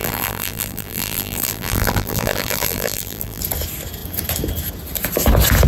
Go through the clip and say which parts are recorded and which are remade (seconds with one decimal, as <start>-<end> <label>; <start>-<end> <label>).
0.0-3.4 remade; 3.4-5.7 recorded

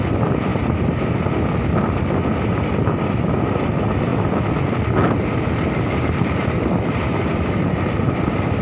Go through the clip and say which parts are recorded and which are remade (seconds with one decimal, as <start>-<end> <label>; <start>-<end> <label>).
0.0-8.6 recorded

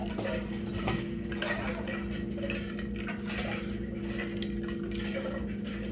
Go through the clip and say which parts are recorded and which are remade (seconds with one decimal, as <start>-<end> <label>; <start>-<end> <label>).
0.0-0.8 recorded; 0.8-1.3 remade; 1.3-5.9 recorded

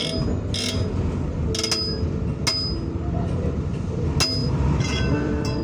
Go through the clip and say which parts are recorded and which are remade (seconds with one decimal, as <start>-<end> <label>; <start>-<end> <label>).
0.0-4.4 recorded; 4.4-5.6 remade

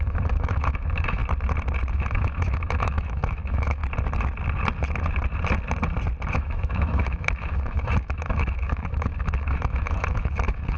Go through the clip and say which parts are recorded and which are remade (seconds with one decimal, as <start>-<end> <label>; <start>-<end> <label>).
0.0-1.2 remade; 1.2-1.9 recorded; 1.9-3.8 remade; 3.8-6.3 recorded; 6.3-10.8 remade

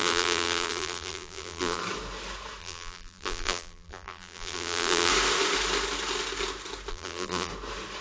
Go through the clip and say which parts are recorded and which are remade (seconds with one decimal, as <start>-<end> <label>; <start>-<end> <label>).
0.0-1.8 remade; 1.8-2.6 recorded; 2.6-5.1 remade; 5.1-6.9 recorded; 6.9-7.5 remade; 7.5-8.0 recorded